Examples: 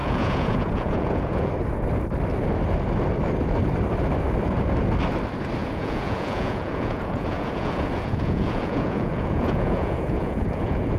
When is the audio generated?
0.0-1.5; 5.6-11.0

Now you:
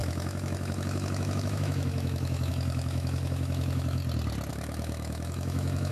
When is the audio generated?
0.0-4.0; 4.5-5.9

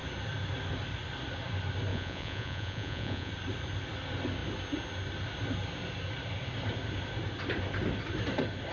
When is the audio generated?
1.9-3.3

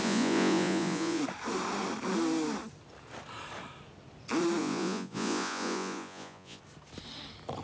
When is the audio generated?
0.0-1.2; 4.6-6.6